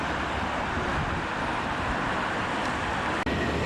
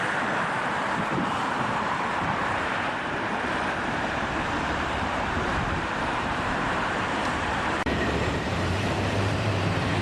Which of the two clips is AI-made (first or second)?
second